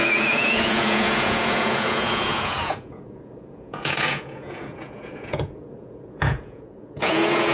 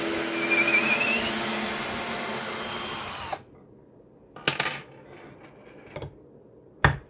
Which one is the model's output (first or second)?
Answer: first